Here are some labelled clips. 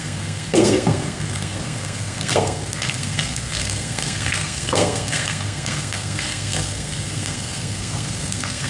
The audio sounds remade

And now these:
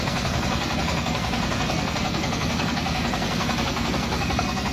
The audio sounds remade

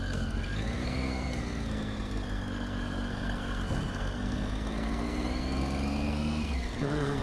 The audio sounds remade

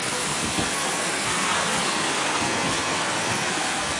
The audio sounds remade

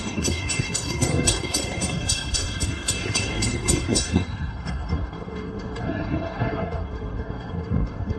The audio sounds remade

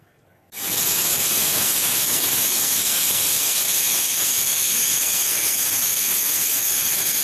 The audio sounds remade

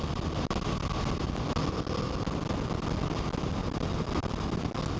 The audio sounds recorded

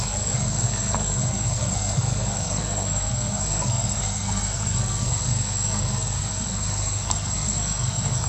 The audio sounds remade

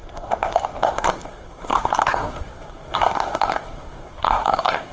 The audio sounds remade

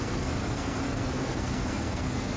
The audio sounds remade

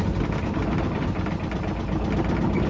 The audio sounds recorded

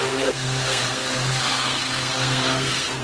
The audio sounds remade